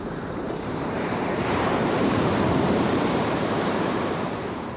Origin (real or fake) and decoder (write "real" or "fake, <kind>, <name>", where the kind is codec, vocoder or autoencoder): fake, vocoder, BigVGAN v2